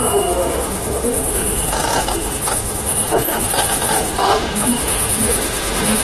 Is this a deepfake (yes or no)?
yes